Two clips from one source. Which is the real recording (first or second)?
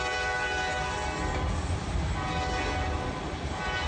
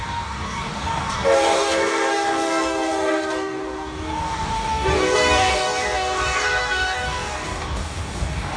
first